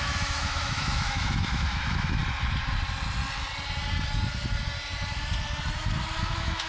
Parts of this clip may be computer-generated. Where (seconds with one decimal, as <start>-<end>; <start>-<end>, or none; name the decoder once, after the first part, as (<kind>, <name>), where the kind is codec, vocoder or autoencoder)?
0.0-2.2 (autoencoder, DAC-VAE); 6.2-6.7